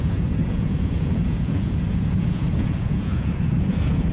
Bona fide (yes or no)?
no